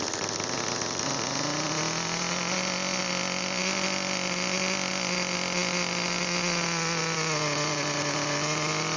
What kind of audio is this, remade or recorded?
recorded